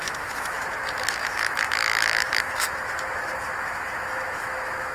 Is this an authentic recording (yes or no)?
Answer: no